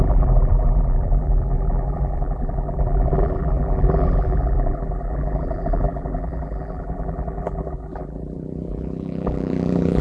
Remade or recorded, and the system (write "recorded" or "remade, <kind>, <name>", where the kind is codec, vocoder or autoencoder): remade, vocoder, BigVGAN v2